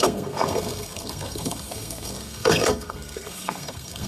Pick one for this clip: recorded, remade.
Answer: remade